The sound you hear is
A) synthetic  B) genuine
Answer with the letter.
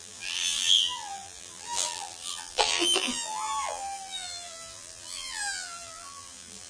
A